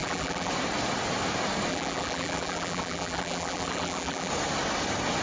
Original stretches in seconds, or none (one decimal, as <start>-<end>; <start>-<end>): 0.5-1.7; 4.3-5.2